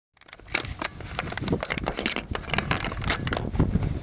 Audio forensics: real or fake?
real